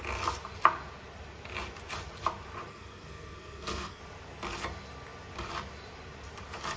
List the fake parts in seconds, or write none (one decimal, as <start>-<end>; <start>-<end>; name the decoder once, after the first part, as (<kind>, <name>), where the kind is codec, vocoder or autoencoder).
2.7-4.0 (codec, SNAC)